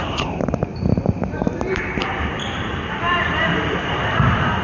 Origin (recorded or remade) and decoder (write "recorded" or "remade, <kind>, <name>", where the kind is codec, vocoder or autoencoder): remade, vocoder, BigVGAN v2